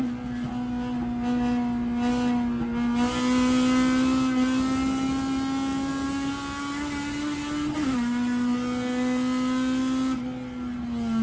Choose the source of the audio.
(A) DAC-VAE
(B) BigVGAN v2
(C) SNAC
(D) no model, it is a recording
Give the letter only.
D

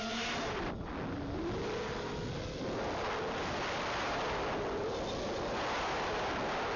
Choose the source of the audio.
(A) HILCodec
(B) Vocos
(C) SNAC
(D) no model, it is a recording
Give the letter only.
D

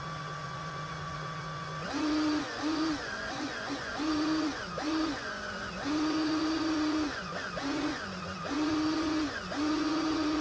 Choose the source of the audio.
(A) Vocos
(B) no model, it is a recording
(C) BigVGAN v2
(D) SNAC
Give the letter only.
A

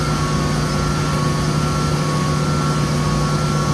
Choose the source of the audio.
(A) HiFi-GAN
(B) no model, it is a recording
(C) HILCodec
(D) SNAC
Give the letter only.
B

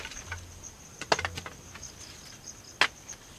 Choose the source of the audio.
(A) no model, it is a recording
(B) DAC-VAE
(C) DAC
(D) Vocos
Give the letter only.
A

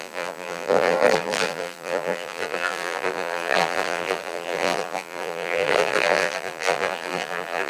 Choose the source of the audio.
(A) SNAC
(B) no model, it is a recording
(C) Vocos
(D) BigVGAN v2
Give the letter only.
D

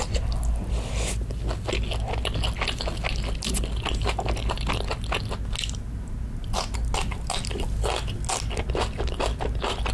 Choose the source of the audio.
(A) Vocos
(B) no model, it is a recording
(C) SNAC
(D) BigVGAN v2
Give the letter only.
B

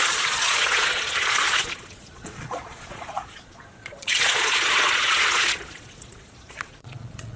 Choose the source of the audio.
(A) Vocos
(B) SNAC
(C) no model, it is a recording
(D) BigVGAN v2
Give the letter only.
A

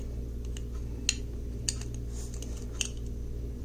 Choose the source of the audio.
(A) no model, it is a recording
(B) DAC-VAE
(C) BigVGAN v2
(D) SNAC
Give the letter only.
A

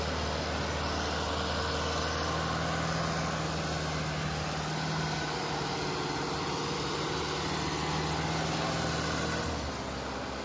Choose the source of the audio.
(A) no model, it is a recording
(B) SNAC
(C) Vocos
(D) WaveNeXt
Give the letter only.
A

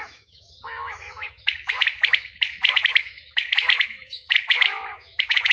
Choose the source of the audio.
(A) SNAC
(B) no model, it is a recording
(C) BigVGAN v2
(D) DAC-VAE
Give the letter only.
D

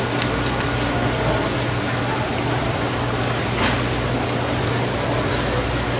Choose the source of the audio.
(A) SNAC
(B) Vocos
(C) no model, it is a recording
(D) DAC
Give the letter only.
C